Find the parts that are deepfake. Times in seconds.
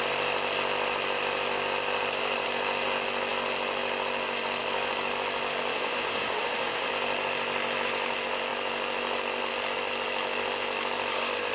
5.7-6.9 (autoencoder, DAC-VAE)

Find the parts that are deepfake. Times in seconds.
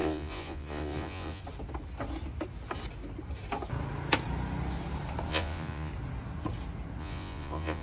0.0-1.4 (vocoder, Vocos); 5.3-5.9; 7.0-7.8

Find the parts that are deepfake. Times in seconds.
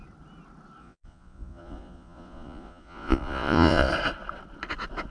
0.8-3.9 (vocoder, Vocos)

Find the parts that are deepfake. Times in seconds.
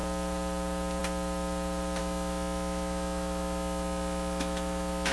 2.0-5.1 (autoencoder, DAC-VAE)